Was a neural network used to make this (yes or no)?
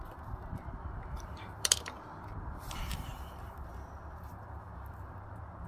yes